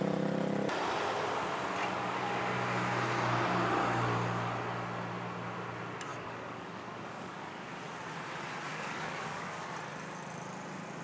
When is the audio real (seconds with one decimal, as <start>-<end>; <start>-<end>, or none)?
0.0-1.8; 2.4-6.1; 7.7-8.7; 9.7-11.0